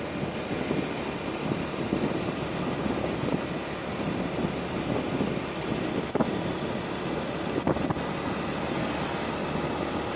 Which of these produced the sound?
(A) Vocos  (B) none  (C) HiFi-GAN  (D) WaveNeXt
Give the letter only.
B